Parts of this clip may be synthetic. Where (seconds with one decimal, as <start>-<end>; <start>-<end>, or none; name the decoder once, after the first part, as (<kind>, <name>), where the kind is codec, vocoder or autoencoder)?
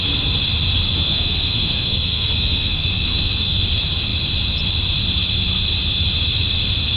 1.0-3.6 (codec, SNAC)